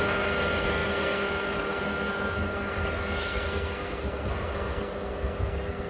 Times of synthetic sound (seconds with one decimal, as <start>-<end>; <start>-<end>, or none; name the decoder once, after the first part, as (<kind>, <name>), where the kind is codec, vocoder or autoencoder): 0.0-5.9 (codec, SNAC)